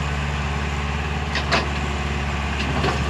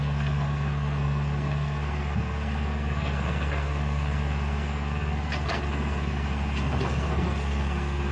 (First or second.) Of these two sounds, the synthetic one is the second